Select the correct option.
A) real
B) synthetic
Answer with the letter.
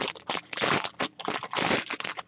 A